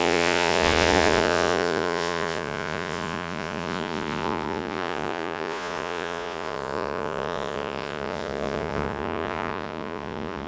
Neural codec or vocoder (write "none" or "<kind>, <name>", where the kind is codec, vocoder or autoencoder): vocoder, Vocos